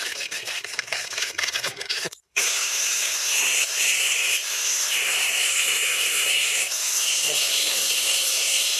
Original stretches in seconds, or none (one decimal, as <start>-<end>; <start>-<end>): none